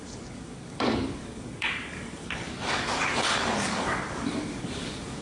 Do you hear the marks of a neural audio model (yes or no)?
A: yes